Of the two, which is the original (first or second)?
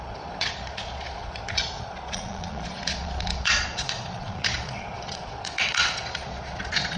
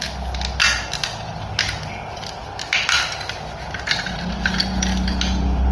second